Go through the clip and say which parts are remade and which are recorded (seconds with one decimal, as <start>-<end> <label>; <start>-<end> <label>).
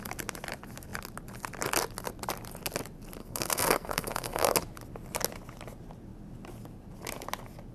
0.0-3.2 recorded; 3.2-4.5 remade; 4.5-7.7 recorded